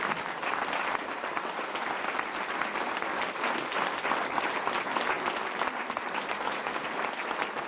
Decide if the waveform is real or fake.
real